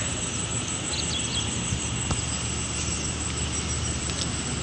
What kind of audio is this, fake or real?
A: real